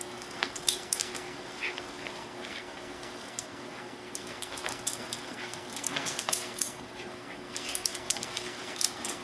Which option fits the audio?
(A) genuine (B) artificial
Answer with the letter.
B